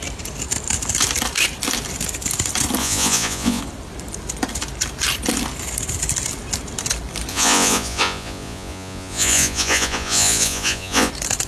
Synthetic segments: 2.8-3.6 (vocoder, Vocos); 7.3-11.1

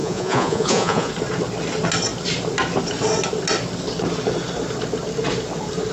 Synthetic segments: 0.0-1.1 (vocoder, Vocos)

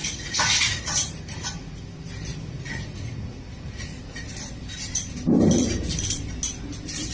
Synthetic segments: 0.0-1.8 (vocoder, Vocos); 2.3-4.3

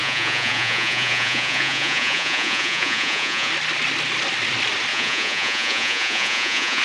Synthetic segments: 0.0-3.5 (vocoder, Vocos); 4.9-6.8